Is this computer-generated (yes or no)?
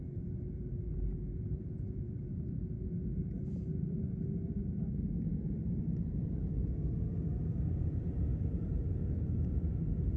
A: yes